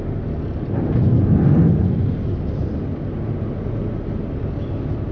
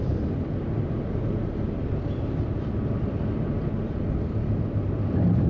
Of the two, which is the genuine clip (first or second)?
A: first